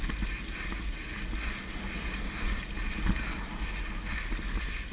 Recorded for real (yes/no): yes